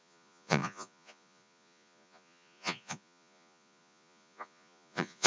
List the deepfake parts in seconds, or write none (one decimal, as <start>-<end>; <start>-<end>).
0.0-5.3